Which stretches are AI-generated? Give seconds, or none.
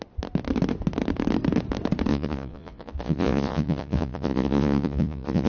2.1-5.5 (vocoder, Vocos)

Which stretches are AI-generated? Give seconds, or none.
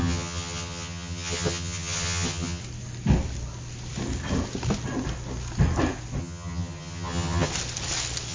0.0-2.6 (vocoder, HiFi-GAN); 6.2-7.5